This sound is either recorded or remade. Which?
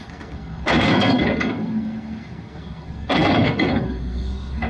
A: remade